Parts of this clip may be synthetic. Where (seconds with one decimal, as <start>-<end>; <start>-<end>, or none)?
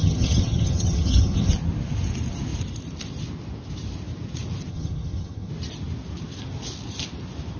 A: 0.0-1.5; 4.7-5.5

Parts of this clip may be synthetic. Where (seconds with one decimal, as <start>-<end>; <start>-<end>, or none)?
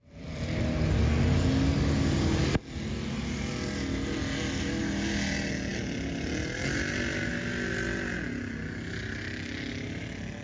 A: none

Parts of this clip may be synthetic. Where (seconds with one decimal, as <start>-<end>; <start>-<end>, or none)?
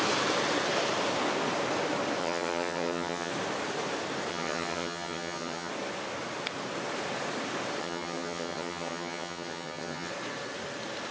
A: 2.2-3.3; 4.3-5.7; 7.8-10.1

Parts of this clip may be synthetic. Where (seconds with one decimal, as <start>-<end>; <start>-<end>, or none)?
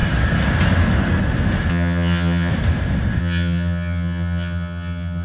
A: 1.7-2.5; 3.2-5.2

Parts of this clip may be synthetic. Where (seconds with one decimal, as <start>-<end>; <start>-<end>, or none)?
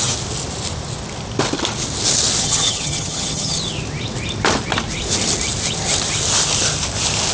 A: 2.4-3.6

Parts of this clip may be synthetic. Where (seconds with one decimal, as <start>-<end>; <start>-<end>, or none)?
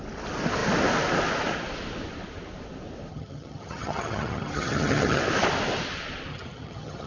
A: 3.1-5.2; 6.3-7.1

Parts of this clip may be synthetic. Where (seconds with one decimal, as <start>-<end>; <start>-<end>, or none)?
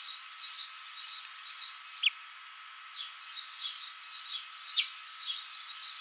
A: none